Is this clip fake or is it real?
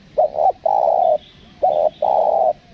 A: real